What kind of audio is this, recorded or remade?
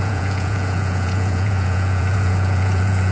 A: remade